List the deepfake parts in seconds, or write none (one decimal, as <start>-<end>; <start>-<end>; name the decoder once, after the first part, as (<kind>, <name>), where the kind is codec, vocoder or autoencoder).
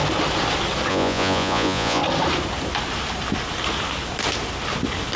0.9-2.0 (vocoder, Vocos)